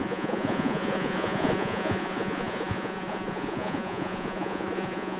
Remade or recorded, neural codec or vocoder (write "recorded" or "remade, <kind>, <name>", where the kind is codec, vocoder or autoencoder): remade, vocoder, Vocos